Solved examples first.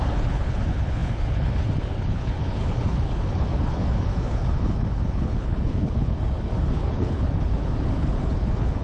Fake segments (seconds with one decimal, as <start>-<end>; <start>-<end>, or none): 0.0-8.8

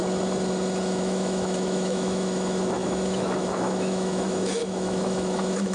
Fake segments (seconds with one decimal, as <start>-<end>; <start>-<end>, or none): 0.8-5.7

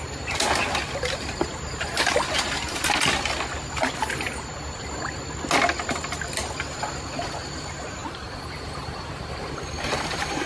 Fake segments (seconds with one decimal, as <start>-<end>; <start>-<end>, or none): 8.0-10.5